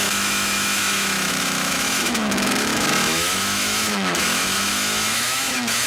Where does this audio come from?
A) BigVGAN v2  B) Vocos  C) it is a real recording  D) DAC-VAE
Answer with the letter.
D